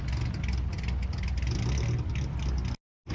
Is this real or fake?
real